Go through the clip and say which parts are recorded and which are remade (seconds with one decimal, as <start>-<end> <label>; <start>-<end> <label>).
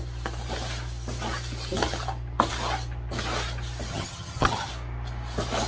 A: 0.0-3.9 recorded; 3.9-4.7 remade; 4.7-5.7 recorded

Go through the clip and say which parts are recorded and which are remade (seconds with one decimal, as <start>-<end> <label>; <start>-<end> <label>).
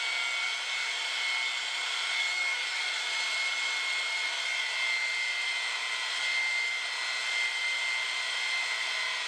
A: 0.0-2.2 recorded; 2.2-3.0 remade; 3.0-9.3 recorded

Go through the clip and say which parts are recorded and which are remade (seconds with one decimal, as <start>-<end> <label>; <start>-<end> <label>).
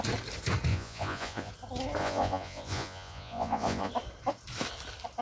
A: 0.0-0.7 recorded; 0.7-1.5 remade; 1.5-2.0 recorded; 2.0-3.9 remade; 3.9-5.2 recorded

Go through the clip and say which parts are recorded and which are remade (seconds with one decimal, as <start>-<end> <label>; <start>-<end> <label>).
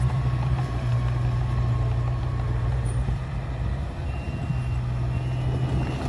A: 0.0-0.9 remade; 0.9-2.2 recorded; 2.2-4.5 remade; 4.5-6.1 recorded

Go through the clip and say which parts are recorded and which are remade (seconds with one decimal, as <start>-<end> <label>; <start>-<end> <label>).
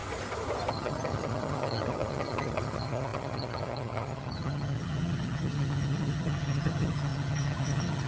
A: 0.0-0.7 recorded; 0.7-8.1 remade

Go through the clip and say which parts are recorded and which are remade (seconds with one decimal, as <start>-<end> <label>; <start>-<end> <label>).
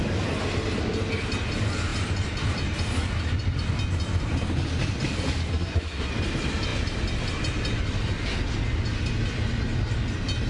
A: 0.0-5.5 recorded; 5.5-6.1 remade; 6.1-10.5 recorded